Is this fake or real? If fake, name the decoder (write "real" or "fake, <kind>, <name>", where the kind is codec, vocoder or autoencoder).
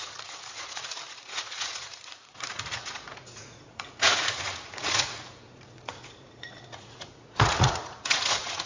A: fake, vocoder, Vocos